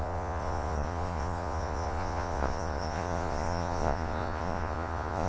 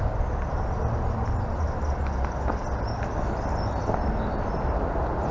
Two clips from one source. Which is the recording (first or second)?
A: second